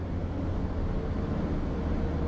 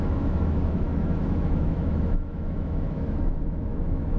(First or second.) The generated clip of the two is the second